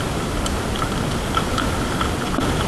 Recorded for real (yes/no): yes